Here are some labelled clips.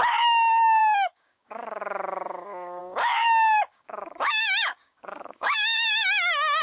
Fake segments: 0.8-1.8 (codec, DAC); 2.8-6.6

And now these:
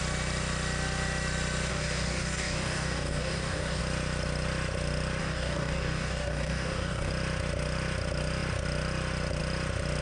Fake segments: 1.7-3.8 (codec, DAC); 5.2-7.1

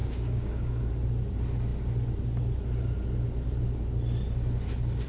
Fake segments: 0.0-0.9 (codec, DAC)

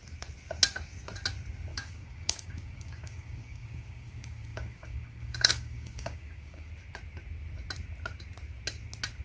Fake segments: 1.7-6.7 (codec, DAC)

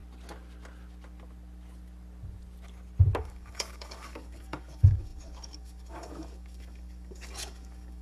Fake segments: 3.2-8.0 (codec, DAC)

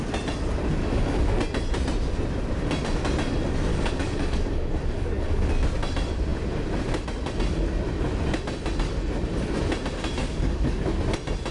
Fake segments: 0.8-1.4 (codec, DAC); 3.7-5.5; 10.2-10.8

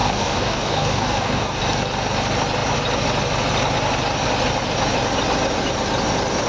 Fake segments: 0.0-1.6 (codec, DAC)

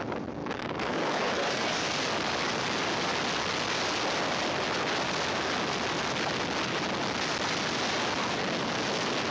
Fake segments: 0.4-1.8 (codec, DAC)